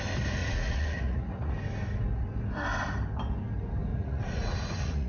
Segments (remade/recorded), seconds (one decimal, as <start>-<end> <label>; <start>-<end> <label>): 0.0-0.4 recorded; 0.4-1.5 remade; 1.5-3.9 recorded; 3.9-5.1 remade